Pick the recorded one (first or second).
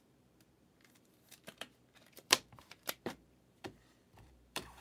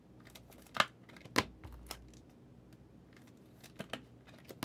second